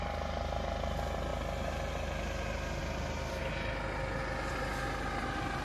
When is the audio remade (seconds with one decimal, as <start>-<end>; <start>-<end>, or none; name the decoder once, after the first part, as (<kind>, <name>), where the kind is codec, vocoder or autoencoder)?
none